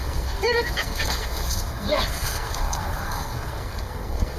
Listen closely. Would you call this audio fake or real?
fake